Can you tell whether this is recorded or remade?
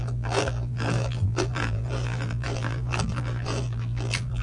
remade